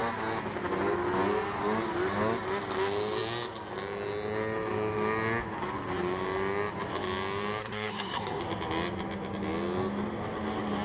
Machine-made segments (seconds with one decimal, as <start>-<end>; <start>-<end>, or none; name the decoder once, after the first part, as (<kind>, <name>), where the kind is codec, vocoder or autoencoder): 7.6-8.4 (codec, SNAC)

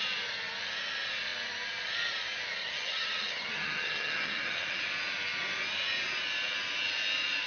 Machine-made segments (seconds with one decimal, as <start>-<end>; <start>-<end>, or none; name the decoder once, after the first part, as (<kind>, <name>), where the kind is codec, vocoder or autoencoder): 2.6-4.8 (vocoder, HiFi-GAN)

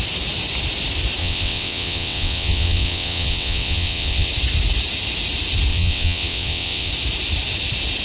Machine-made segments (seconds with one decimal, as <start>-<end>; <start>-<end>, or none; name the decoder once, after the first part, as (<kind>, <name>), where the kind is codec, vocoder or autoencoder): 1.2-4.3 (vocoder, WaveNeXt); 5.7-6.9

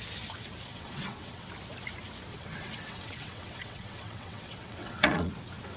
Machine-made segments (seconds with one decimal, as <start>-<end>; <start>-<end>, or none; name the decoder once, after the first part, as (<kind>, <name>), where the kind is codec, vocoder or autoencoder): 0.7-1.5 (vocoder, WaveNeXt); 2.3-5.3

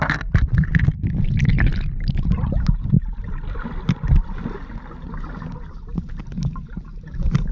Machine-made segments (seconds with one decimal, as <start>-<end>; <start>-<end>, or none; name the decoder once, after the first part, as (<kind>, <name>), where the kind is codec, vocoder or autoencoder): none

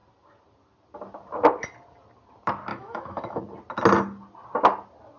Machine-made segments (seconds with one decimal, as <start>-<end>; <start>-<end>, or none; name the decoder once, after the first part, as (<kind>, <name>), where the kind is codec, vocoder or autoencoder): 2.7-3.4 (autoencoder, DAC-VAE)